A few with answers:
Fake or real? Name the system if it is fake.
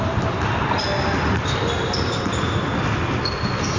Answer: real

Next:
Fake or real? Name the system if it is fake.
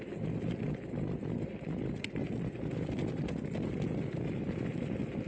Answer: real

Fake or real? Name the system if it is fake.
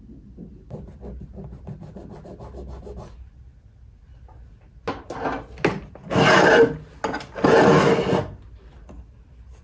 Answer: real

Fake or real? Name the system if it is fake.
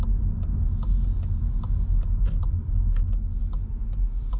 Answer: real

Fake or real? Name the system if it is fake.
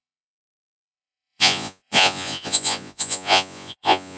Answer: fake, vocoder, Vocos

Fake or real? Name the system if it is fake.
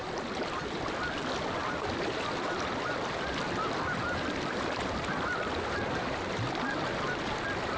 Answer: real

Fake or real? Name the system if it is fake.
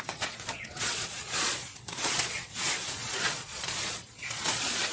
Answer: fake, vocoder, Vocos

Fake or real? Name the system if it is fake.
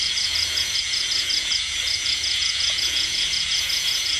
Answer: fake, vocoder, Vocos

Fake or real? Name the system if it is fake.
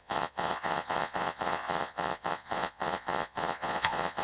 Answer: fake, vocoder, Vocos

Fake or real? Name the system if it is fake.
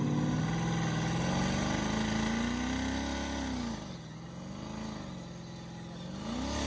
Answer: real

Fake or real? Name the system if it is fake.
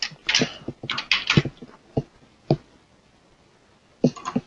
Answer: real